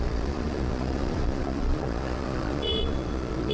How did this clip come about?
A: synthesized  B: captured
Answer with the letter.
A